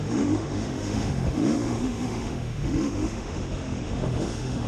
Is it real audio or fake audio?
fake